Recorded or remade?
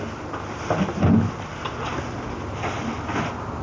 recorded